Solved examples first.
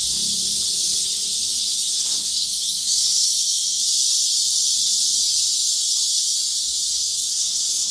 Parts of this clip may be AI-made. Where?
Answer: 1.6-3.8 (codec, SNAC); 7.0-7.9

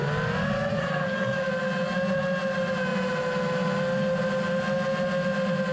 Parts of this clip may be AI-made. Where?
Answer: 0.7-1.5 (codec, SNAC)

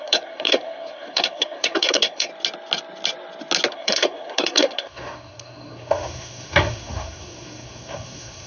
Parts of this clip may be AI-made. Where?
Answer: 0.0-2.3 (codec, SNAC); 3.7-8.5